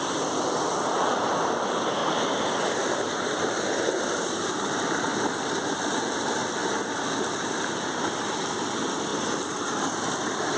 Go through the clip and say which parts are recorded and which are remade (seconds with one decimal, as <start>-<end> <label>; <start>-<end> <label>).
0.0-2.0 remade; 2.0-3.5 recorded; 3.5-5.1 remade; 5.1-5.7 recorded; 5.7-6.4 remade; 6.4-8.3 recorded; 8.3-10.6 remade